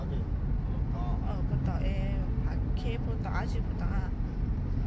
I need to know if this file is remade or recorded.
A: recorded